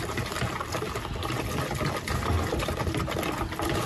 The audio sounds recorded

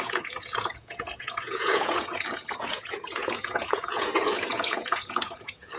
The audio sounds remade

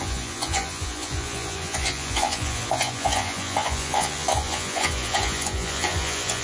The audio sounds remade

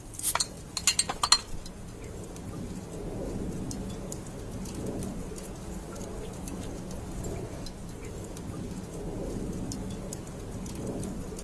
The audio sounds recorded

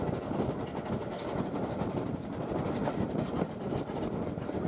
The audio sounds recorded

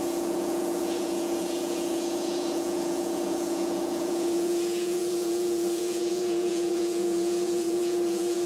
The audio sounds remade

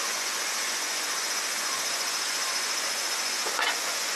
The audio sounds remade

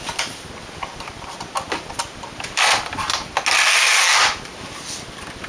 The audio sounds recorded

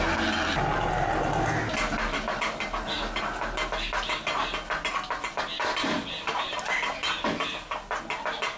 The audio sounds recorded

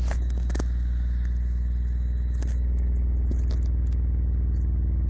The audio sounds recorded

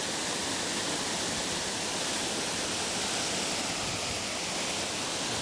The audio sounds recorded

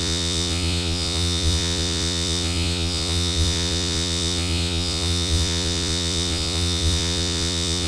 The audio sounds remade